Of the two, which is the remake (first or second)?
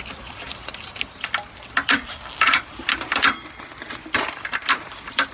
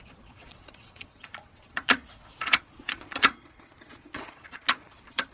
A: second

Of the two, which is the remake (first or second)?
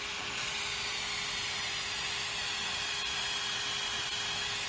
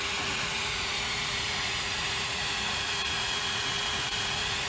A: second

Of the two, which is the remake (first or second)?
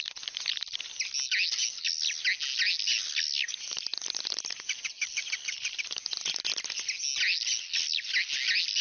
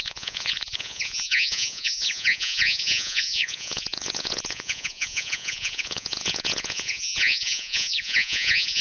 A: second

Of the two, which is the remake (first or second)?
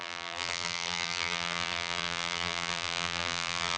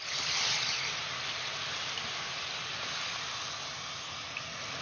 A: first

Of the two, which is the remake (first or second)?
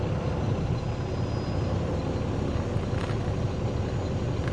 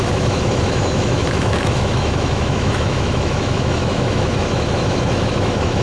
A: second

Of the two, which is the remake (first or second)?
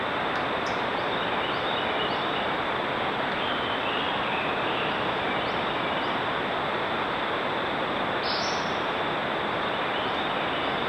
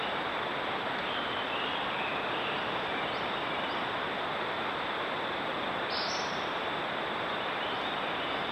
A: second